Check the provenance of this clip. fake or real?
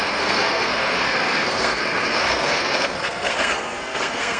fake